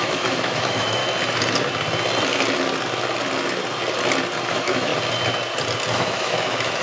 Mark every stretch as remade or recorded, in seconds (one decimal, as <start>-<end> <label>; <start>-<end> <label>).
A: 0.0-1.0 remade; 1.0-4.5 recorded; 4.5-4.9 remade; 4.9-5.9 recorded; 5.9-6.8 remade